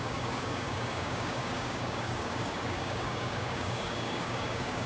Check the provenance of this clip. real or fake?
fake